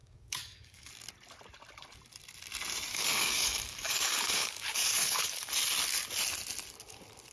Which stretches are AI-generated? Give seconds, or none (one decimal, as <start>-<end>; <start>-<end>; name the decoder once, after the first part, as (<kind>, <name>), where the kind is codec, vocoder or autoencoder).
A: 0.0-0.9 (codec, DAC); 2.9-5.5